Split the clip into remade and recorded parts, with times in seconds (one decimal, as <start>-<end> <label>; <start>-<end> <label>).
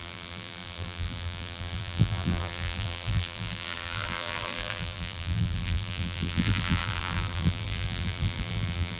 0.0-9.0 remade